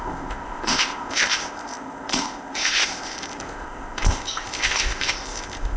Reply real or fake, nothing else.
fake